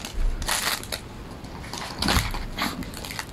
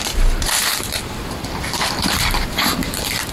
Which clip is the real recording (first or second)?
first